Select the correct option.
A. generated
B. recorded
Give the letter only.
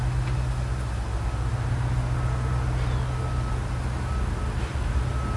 B